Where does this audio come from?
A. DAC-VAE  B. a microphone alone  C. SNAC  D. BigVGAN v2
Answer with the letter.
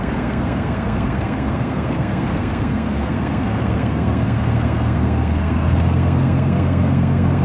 C